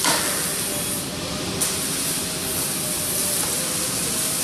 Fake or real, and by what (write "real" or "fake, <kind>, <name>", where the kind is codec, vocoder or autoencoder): real